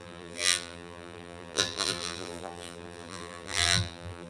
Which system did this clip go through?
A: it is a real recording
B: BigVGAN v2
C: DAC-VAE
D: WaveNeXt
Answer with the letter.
B